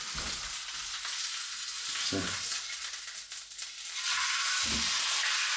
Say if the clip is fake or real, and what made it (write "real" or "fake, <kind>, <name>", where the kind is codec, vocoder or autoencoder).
real